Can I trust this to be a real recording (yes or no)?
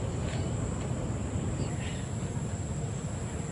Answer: yes